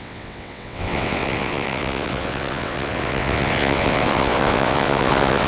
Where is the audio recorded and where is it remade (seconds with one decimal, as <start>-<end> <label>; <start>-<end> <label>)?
0.0-5.5 remade

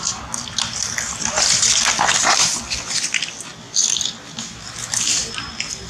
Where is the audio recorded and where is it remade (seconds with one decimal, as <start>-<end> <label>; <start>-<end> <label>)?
0.0-5.9 recorded

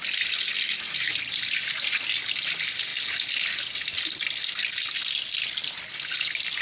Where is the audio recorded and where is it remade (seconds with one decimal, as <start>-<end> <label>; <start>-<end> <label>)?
0.0-6.6 recorded

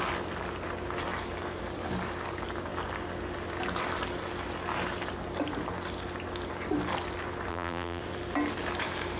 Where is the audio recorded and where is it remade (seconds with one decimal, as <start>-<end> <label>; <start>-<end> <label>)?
0.0-7.5 recorded; 7.5-8.0 remade; 8.0-9.2 recorded

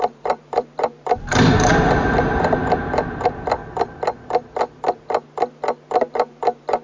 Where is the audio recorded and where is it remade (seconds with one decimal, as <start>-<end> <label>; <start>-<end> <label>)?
0.0-3.6 remade; 3.6-6.1 recorded; 6.1-6.8 remade

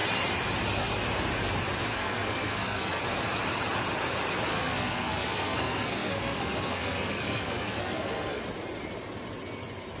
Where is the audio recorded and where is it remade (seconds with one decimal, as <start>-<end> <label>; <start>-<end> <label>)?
0.0-1.9 recorded; 1.9-3.0 remade; 3.0-4.5 recorded; 4.5-8.4 remade; 8.4-10.0 recorded

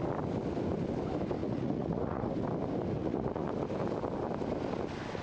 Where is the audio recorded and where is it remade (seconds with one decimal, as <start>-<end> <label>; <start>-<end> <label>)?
0.0-1.4 recorded; 1.4-2.3 remade; 2.3-3.0 recorded; 3.0-3.5 remade; 3.5-5.2 recorded

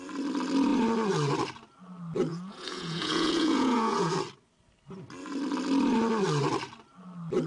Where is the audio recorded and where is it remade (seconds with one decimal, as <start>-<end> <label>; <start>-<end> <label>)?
0.0-2.3 recorded; 2.3-4.1 remade; 4.1-7.5 recorded